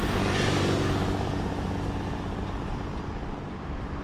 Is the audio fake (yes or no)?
no